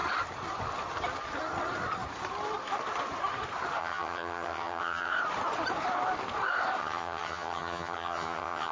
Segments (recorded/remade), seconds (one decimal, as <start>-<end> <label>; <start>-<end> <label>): 0.0-3.8 recorded; 3.8-5.1 remade; 5.1-6.8 recorded; 6.8-8.7 remade